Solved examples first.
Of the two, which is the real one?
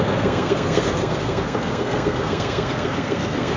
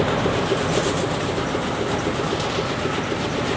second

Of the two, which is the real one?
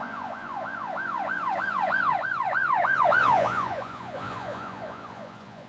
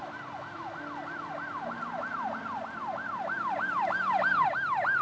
second